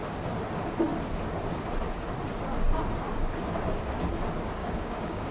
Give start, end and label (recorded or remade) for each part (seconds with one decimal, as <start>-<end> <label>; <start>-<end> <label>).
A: 0.0-4.6 recorded; 4.6-5.3 remade